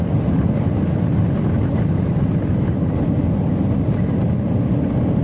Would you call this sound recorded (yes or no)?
yes